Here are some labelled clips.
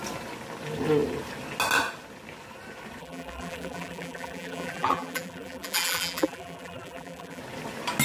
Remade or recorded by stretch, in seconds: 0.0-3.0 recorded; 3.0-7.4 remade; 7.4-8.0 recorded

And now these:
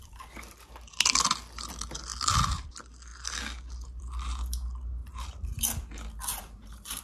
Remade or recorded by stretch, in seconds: 0.0-5.0 recorded; 5.0-5.6 remade; 5.6-6.3 recorded; 6.3-7.0 remade

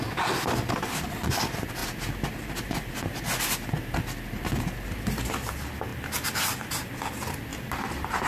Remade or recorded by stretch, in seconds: 0.0-5.9 recorded; 5.9-6.9 remade; 6.9-7.5 recorded; 7.5-8.3 remade